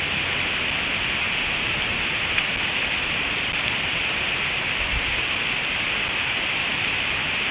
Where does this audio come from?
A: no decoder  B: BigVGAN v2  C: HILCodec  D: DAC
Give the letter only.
A